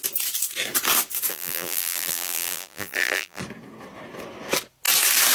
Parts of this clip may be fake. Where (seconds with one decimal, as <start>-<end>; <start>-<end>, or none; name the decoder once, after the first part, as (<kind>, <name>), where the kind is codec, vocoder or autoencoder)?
1.3-3.4 (vocoder, BigVGAN v2)